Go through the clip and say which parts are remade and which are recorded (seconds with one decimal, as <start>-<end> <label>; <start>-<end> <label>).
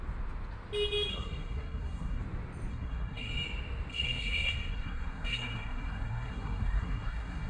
0.0-1.1 recorded; 1.1-2.2 remade; 2.2-2.7 recorded; 2.7-3.3 remade; 3.3-3.9 recorded; 3.9-7.5 remade